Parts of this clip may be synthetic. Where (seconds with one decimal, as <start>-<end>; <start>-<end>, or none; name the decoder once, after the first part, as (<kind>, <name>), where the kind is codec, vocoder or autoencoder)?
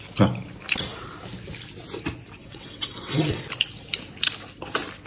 2.4-3.4 (vocoder, WaveNeXt)